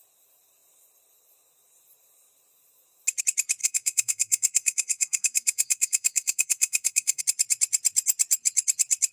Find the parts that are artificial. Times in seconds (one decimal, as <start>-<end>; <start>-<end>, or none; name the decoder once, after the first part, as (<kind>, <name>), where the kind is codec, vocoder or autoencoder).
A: 3.6-7.2 (codec, SNAC)